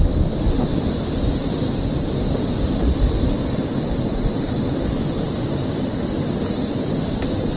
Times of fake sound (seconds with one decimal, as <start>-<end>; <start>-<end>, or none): 0.0-7.6